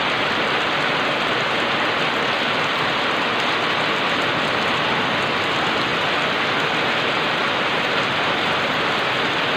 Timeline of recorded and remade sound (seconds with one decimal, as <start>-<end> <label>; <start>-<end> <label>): 0.0-9.6 recorded